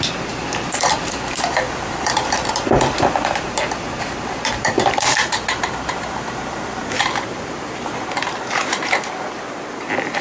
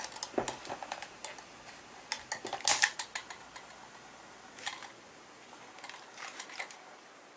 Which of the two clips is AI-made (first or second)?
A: first